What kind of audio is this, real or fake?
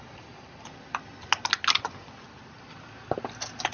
real